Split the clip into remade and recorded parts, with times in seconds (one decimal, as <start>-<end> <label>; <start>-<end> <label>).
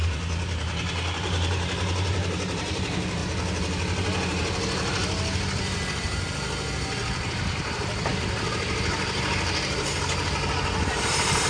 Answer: 0.0-3.2 remade; 3.2-7.5 recorded; 7.5-8.1 remade; 8.1-11.0 recorded; 11.0-11.5 remade